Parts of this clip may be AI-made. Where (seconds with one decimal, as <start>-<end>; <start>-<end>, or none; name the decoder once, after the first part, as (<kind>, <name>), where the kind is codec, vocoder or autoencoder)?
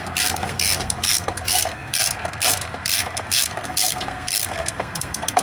0.0-5.4 (codec, SNAC)